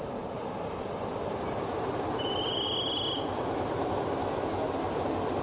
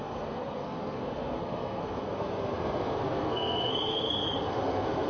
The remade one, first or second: second